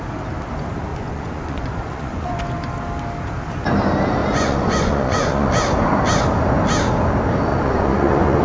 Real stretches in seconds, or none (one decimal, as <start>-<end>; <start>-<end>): 0.0-0.9; 2.4-4.2; 5.5-7.5